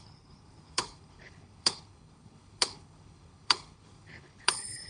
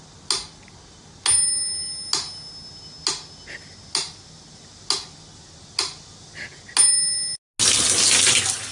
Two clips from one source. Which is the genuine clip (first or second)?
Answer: second